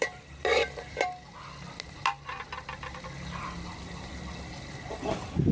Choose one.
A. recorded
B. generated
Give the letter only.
A